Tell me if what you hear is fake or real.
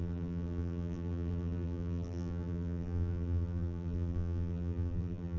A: fake